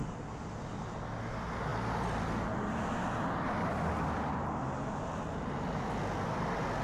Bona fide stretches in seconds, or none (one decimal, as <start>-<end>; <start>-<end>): 0.0-6.8